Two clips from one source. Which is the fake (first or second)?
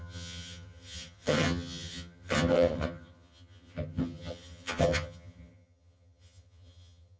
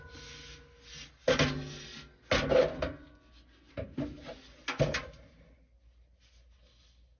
first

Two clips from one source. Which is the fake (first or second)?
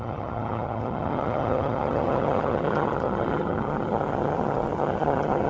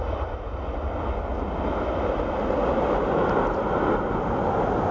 first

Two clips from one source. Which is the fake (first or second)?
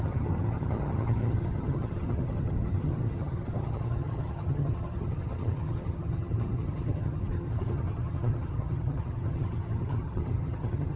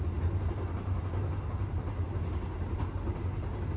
first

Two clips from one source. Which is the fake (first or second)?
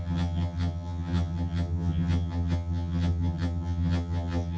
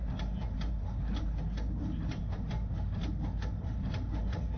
first